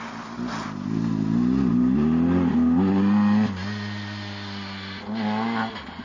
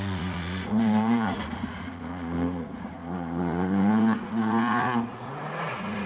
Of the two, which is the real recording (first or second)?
first